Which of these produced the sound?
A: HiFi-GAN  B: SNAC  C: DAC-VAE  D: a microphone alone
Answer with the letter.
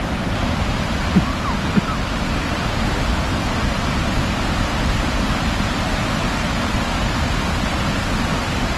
D